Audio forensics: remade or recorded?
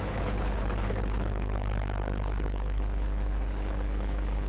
remade